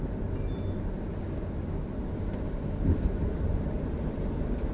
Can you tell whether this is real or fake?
real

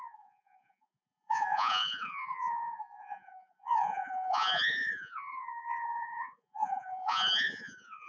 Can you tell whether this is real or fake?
fake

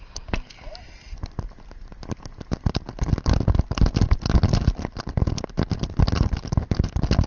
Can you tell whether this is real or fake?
real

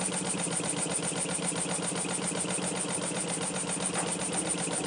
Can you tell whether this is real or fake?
real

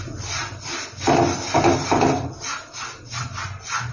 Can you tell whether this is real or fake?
real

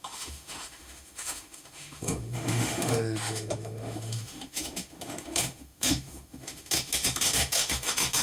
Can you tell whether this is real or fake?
fake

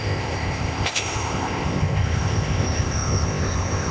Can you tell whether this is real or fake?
fake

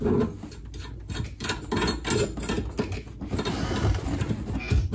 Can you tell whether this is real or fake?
real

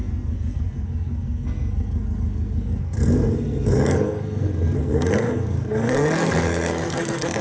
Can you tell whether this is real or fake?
fake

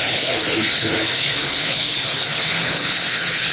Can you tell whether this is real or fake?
fake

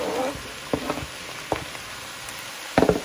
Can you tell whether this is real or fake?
fake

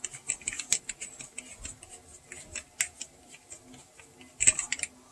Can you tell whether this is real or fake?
real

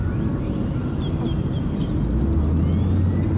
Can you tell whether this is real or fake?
real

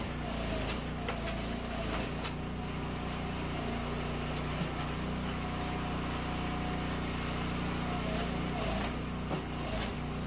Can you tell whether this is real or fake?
real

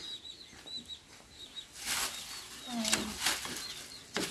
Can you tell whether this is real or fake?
real